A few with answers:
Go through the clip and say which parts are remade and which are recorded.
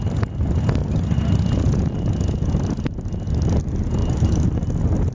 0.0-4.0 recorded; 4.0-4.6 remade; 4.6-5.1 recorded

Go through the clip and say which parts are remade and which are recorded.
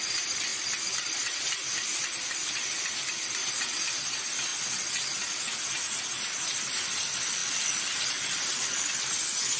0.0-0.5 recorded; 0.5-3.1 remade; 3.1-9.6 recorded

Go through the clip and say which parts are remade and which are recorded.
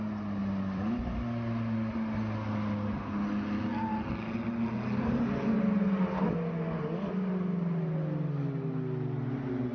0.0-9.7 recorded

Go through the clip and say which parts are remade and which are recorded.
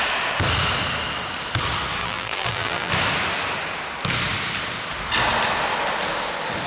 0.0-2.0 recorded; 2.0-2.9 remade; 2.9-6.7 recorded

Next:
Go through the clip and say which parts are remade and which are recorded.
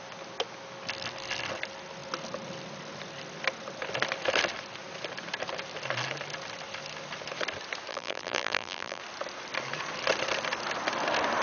0.0-7.9 recorded; 7.9-9.0 remade; 9.0-11.4 recorded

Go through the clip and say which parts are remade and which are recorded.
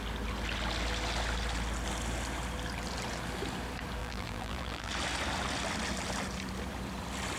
0.0-4.0 recorded; 4.0-4.9 remade; 4.9-7.4 recorded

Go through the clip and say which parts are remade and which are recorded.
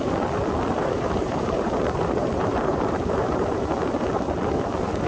0.0-0.8 recorded; 0.8-3.6 remade; 3.6-5.1 recorded